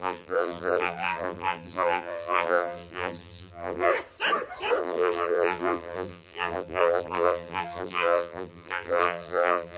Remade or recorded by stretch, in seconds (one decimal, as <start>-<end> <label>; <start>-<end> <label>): 0.0-3.9 remade; 3.9-4.8 recorded; 4.8-9.8 remade